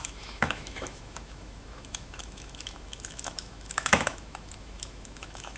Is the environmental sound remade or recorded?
remade